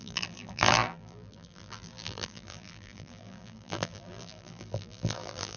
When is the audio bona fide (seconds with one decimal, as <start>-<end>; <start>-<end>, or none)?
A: none